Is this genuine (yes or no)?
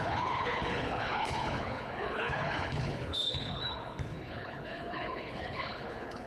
no